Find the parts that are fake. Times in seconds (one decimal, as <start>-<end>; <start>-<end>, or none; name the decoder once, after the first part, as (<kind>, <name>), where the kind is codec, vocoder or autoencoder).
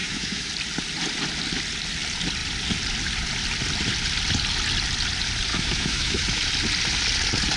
0.0-0.5 (autoencoder, DAC-VAE); 5.5-6.4